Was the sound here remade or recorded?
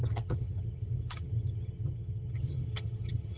remade